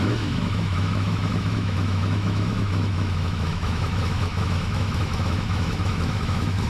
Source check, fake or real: fake